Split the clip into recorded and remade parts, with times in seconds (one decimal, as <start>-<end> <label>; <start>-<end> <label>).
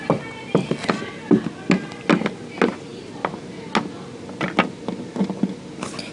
0.0-6.1 recorded